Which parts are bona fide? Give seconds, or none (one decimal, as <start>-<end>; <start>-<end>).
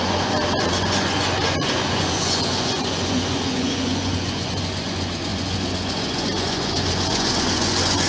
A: none